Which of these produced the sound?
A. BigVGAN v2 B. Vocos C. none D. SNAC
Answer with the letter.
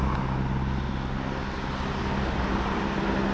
C